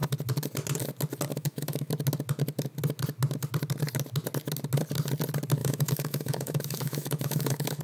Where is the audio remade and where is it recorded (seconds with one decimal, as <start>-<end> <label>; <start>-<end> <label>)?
0.0-1.3 recorded; 1.3-1.9 remade; 1.9-5.6 recorded; 5.6-7.8 remade